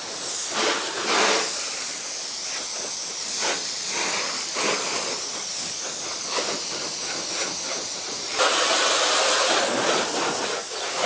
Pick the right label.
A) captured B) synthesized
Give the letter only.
A